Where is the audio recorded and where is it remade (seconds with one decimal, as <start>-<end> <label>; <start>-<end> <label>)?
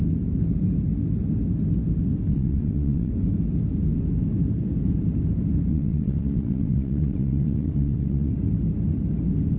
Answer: 0.0-2.3 recorded; 2.3-3.1 remade; 3.1-5.7 recorded; 5.7-8.3 remade; 8.3-9.6 recorded